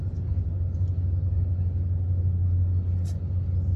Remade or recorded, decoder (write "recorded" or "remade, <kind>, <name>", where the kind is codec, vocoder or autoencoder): recorded